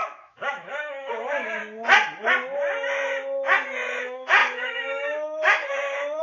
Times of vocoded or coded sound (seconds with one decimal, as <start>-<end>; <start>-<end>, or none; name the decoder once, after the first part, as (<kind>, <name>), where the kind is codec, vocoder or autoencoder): 0.0-1.6 (autoencoder, DAC-VAE); 4.0-6.2